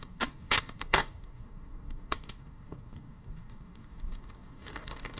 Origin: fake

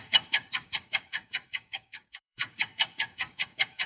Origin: fake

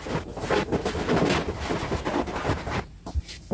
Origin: real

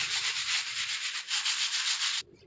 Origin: real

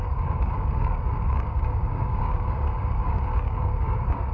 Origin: fake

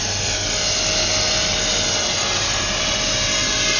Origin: real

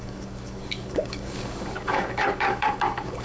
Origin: fake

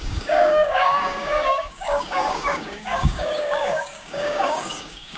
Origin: fake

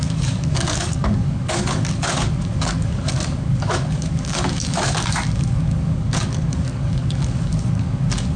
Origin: fake